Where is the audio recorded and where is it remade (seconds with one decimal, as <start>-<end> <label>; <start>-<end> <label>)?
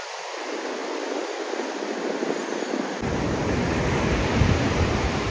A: 0.0-5.3 recorded